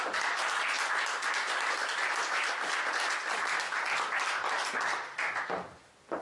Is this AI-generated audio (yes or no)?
no